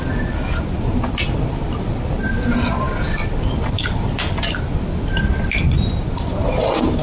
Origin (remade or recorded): recorded